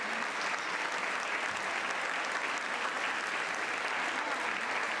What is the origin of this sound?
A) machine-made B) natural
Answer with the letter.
B